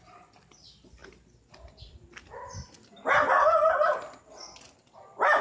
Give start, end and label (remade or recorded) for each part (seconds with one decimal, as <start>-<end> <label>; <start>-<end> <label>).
0.0-5.4 recorded